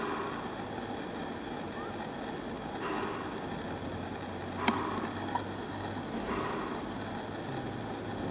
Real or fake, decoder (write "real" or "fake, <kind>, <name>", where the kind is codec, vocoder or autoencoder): real